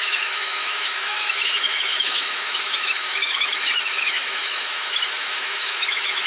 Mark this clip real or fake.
fake